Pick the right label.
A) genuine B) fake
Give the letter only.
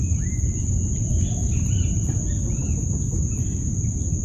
A